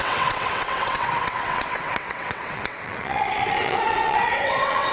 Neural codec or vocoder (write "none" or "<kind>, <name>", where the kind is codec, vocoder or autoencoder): vocoder, WaveNeXt